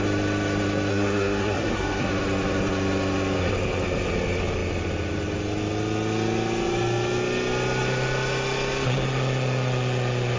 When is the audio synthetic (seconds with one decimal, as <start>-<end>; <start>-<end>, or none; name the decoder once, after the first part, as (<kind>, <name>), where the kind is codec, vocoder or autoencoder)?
0.9-2.1 (codec, SNAC)